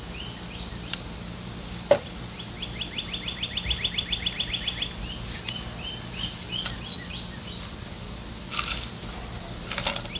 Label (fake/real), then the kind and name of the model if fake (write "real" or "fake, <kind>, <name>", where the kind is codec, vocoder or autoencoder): real